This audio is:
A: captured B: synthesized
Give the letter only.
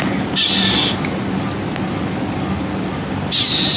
A